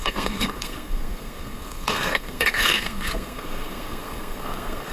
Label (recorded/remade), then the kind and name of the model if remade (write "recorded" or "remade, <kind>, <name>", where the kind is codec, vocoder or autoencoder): remade, codec, SNAC